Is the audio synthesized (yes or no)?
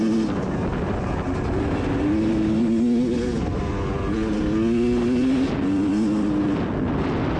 no